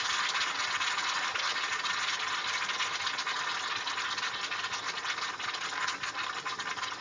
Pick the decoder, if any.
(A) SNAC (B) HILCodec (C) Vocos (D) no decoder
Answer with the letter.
D